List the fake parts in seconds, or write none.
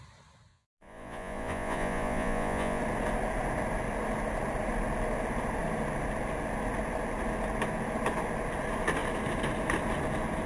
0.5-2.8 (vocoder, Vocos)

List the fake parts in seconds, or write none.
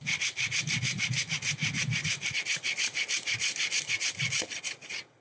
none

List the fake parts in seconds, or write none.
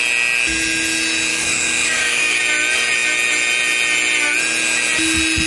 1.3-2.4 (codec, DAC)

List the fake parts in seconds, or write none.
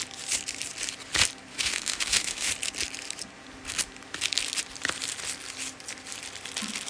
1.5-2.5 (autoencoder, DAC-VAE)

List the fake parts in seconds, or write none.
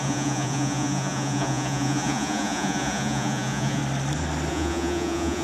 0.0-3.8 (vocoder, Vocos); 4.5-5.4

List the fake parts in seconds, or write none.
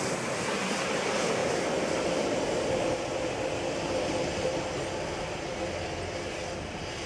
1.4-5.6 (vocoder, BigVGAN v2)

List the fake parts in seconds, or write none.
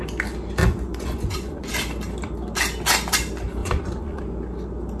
0.6-1.7 (vocoder, Vocos); 3.6-4.2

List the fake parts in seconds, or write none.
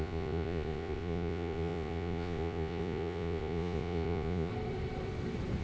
0.0-4.5 (vocoder, Vocos)